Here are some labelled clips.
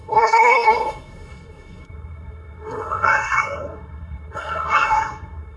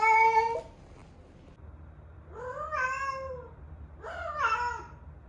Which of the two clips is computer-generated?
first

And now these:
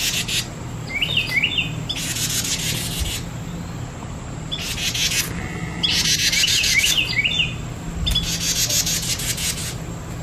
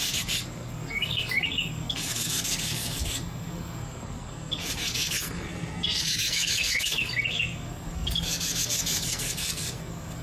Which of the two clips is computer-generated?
second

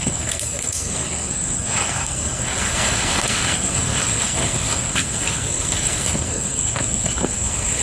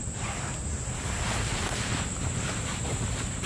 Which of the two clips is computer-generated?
first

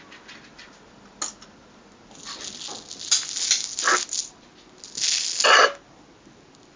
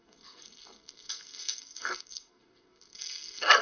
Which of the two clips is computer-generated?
second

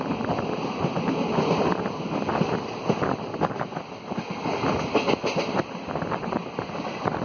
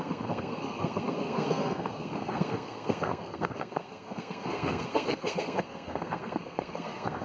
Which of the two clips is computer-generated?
second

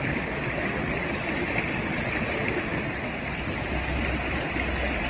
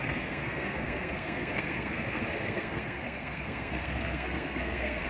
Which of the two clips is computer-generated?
second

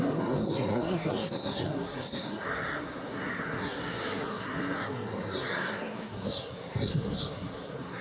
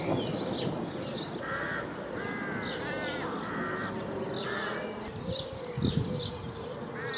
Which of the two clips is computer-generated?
first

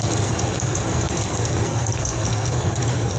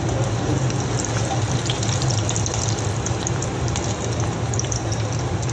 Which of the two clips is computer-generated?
first